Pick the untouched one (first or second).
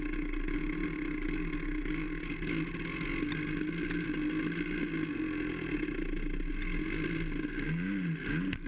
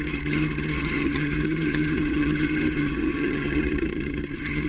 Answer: first